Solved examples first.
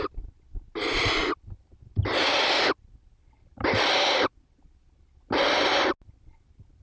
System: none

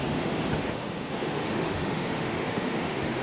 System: autoencoder, DAC-VAE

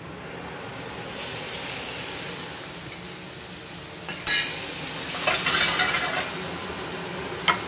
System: none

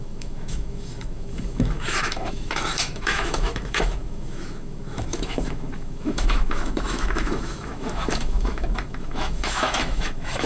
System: autoencoder, DAC-VAE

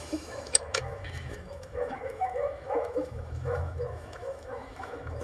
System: autoencoder, DAC-VAE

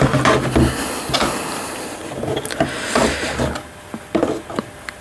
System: none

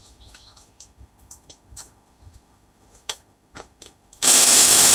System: autoencoder, DAC-VAE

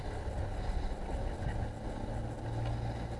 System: none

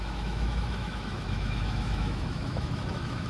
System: autoencoder, DAC-VAE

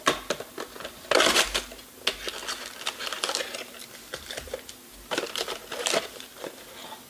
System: none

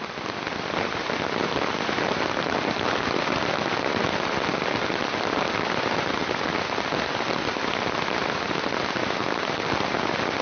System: none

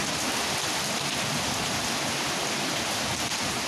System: none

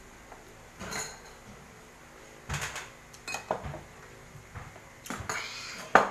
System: none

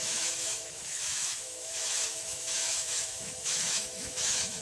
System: autoencoder, DAC-VAE